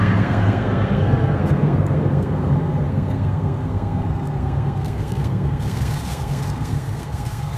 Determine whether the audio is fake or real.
fake